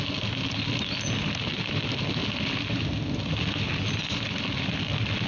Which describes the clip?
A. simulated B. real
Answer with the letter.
B